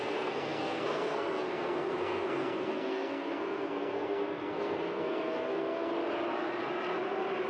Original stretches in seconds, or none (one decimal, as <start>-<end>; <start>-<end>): 5.9-7.5